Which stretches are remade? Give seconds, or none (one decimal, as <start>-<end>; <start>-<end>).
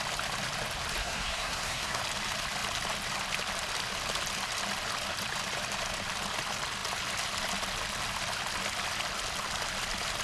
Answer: 1.0-2.0